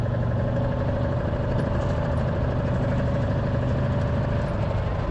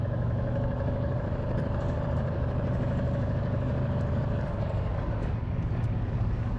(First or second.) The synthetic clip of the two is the second